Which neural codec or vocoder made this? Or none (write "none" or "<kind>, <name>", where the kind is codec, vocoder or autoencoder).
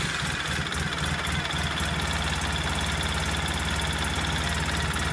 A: none